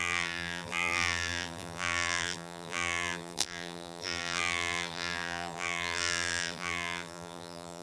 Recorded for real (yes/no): no